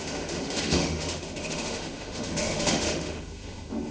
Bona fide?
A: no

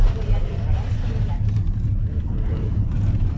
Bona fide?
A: yes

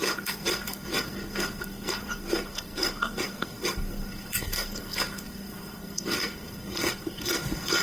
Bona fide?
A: no